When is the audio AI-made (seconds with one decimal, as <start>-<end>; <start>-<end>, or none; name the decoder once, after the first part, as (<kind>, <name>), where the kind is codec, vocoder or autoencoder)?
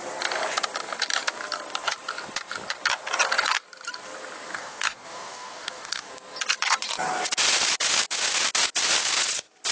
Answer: 4.5-6.1 (codec, DAC)